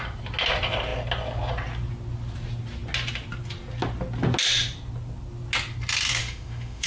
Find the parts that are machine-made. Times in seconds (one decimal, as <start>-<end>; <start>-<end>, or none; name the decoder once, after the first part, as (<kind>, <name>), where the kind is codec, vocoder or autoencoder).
6.2-6.9 (autoencoder, DAC-VAE)